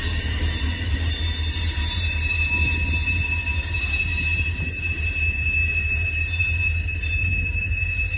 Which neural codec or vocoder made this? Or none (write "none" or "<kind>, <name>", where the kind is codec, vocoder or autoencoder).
vocoder, BigVGAN v2